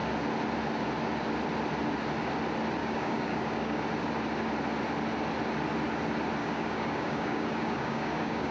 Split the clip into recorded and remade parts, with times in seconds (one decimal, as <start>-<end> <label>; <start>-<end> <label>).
0.0-2.8 recorded; 2.8-3.8 remade; 3.8-6.4 recorded; 6.4-8.5 remade